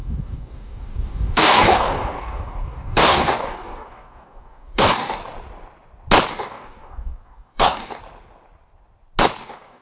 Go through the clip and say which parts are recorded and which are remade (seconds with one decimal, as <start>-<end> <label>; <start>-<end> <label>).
0.0-5.2 remade; 5.2-6.3 recorded; 6.3-8.0 remade; 8.0-9.4 recorded; 9.4-9.8 remade